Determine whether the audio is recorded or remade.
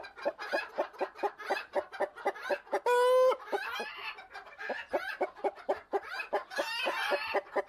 recorded